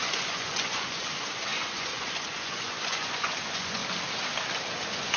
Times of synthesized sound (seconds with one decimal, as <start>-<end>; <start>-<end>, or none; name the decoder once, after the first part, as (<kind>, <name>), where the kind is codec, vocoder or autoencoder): 0.0-3.8 (vocoder, Vocos); 4.8-5.2